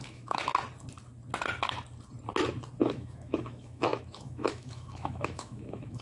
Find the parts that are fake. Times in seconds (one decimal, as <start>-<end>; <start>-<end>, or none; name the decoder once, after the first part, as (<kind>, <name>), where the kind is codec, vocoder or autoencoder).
0.0-0.5 (autoencoder, DAC-VAE); 2.8-6.0